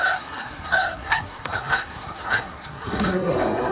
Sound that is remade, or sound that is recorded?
remade